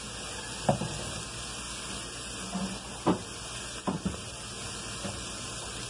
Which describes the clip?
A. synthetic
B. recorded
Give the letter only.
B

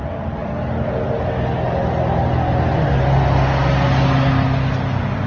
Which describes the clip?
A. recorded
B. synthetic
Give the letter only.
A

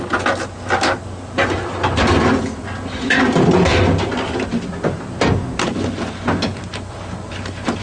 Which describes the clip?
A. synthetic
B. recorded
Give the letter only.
B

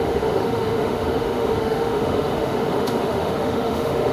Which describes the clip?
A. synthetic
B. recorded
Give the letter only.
A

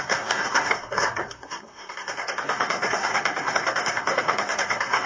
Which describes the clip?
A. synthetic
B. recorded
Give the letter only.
A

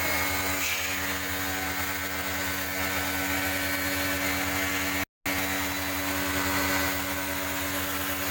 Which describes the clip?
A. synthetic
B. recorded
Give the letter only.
B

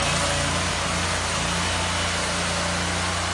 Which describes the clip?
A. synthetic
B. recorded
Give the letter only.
B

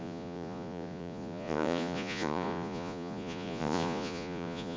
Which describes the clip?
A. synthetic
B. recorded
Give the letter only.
A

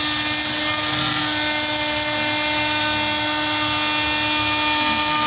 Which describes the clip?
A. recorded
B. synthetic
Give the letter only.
A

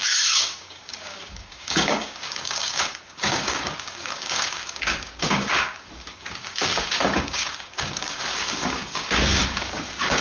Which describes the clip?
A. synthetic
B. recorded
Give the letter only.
A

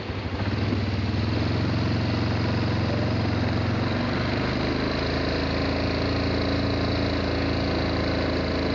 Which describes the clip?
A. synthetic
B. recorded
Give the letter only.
B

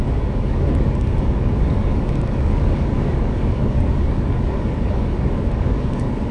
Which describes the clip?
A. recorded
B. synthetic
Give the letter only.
B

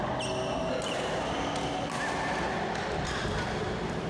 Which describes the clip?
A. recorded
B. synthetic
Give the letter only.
A